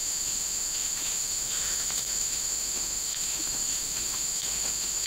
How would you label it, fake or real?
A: fake